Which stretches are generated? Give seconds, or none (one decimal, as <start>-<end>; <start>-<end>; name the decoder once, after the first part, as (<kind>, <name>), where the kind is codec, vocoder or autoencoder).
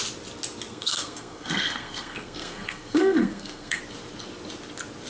0.7-3.8 (codec, SNAC)